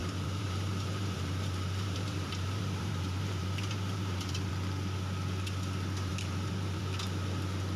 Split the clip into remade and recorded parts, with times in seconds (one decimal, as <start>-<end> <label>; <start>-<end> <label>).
0.0-4.5 remade; 4.5-6.1 recorded; 6.1-6.8 remade; 6.8-7.8 recorded